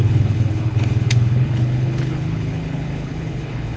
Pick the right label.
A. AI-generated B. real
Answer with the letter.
A